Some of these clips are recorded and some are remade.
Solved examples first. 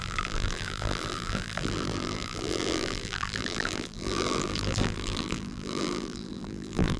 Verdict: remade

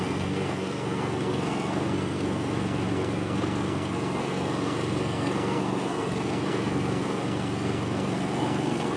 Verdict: remade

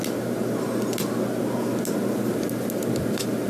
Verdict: recorded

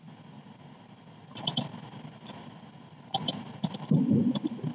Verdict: recorded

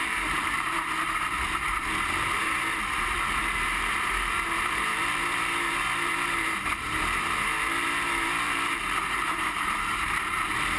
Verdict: remade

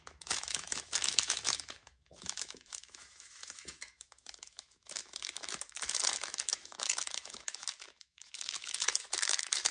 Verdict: remade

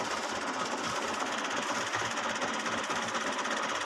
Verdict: recorded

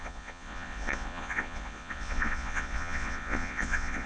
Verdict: remade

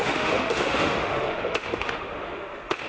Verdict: remade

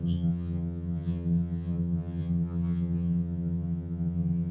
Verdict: remade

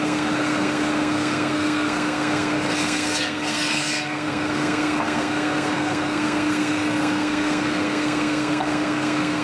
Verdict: remade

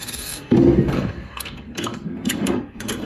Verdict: remade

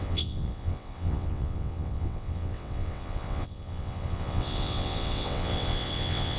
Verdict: remade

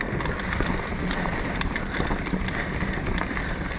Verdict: recorded